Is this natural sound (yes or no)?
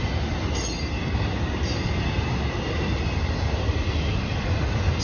yes